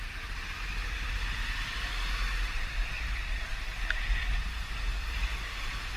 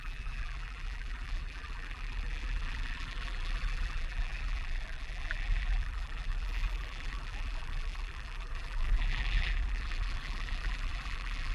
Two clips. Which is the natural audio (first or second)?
first